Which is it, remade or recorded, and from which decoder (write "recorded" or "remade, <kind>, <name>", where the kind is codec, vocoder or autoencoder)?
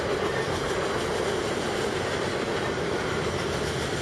recorded